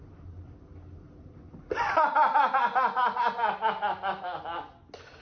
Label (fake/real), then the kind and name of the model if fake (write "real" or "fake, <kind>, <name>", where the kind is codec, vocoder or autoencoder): real